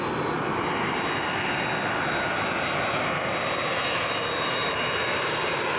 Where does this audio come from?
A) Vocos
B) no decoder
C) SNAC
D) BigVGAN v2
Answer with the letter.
B